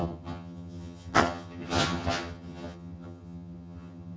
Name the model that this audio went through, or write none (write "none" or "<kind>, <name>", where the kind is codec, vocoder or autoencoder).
vocoder, HiFi-GAN